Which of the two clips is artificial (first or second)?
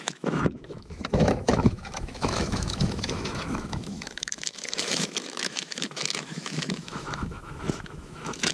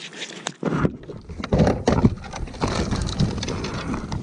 first